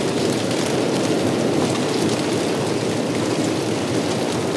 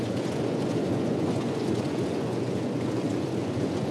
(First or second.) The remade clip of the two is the second